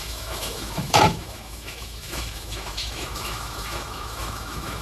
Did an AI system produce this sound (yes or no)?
yes